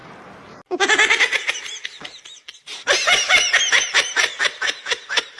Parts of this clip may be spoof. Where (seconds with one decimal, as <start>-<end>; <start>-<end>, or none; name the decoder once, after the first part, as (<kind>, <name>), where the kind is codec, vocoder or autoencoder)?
1.3-5.4 (vocoder, BigVGAN v2)